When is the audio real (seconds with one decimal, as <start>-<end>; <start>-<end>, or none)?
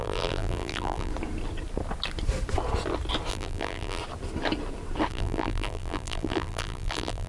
1.1-3.3; 4.0-5.1